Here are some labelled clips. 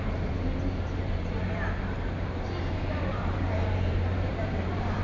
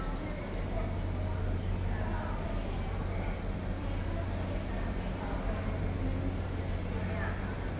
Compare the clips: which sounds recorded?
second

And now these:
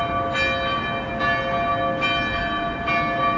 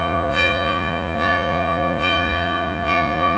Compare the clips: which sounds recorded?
first